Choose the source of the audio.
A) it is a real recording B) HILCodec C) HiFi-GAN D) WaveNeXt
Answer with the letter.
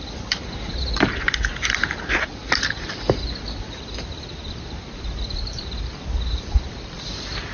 A